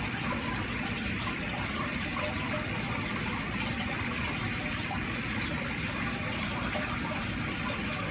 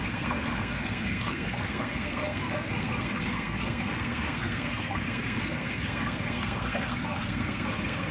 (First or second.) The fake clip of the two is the second